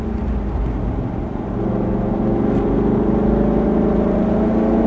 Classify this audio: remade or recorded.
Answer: recorded